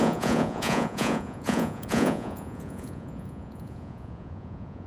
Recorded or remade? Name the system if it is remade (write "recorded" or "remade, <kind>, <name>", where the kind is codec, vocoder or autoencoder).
remade, vocoder, Vocos